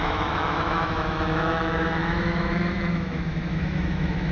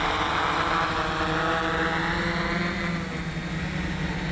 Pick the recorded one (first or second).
second